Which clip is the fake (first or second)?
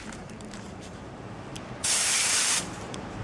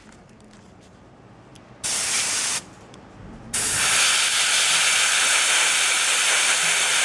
first